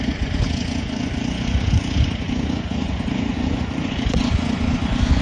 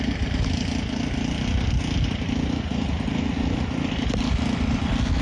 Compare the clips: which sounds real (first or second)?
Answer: second